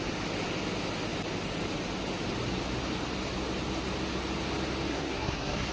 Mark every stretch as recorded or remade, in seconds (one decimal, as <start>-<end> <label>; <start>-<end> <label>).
0.0-4.9 recorded; 4.9-5.7 remade